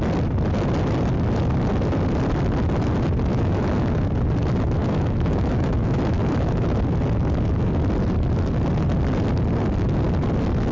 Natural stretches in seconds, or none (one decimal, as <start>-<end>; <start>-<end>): 0.0-3.3; 4.1-4.8; 6.8-10.7